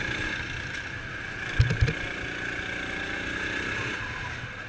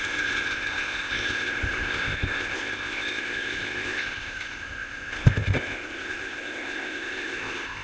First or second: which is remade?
second